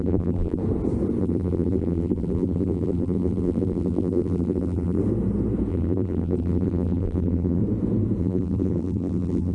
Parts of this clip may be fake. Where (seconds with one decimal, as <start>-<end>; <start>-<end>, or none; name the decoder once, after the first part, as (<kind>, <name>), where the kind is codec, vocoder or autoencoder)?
0.0-0.6 (vocoder, BigVGAN v2); 1.2-5.0; 5.7-7.6; 8.2-9.5